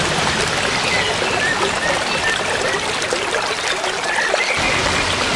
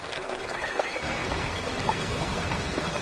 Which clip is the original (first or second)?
first